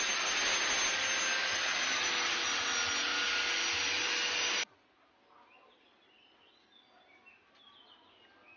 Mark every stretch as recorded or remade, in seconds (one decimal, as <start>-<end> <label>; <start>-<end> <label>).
0.0-8.6 recorded